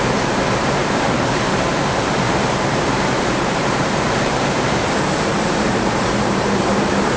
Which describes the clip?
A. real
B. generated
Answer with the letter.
B